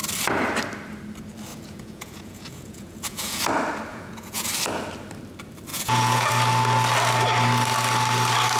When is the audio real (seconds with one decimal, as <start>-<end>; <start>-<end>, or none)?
0.0-1.5; 3.4-3.9; 4.5-5.7; 6.3-8.6